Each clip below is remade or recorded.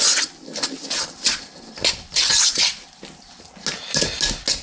recorded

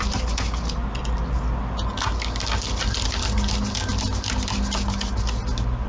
recorded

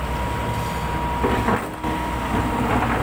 recorded